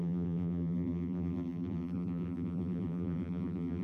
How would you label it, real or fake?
fake